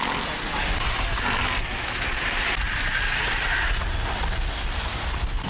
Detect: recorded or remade recorded